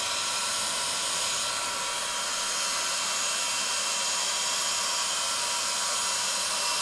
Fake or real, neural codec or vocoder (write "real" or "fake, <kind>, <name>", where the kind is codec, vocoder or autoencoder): real